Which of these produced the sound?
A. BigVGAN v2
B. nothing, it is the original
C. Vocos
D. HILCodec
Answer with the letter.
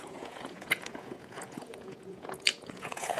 C